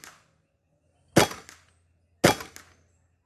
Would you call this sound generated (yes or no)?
no